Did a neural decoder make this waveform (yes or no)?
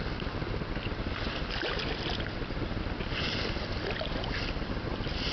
no